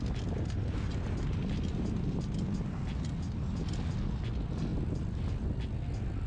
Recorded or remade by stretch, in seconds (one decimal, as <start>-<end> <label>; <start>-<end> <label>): 0.0-4.7 recorded; 4.7-5.6 remade; 5.6-6.3 recorded